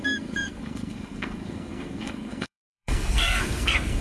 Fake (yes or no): yes